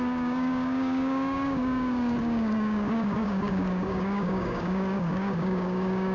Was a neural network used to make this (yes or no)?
yes